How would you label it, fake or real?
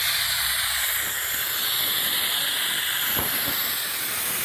real